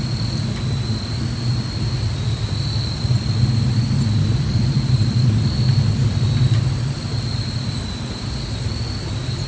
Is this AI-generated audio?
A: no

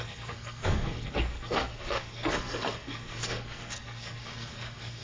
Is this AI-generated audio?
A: yes